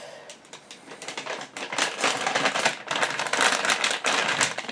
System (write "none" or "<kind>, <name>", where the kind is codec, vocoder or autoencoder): none